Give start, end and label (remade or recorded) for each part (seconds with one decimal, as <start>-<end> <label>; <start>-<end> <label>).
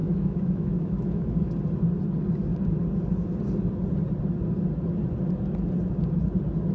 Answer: 0.0-1.5 remade; 1.5-6.7 recorded